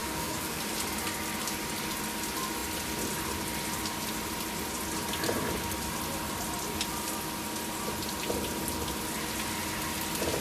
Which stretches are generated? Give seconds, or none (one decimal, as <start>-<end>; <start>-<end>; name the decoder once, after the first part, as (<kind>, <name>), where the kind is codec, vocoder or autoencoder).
0.0-0.6 (codec, SNAC)